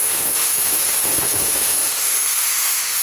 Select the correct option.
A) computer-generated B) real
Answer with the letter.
A